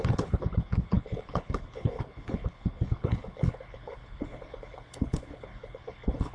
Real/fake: fake